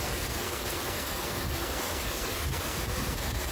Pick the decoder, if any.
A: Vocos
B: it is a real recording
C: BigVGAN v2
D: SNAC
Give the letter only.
D